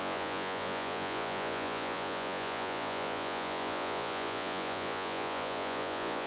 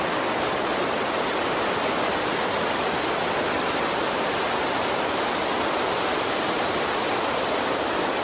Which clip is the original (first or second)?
second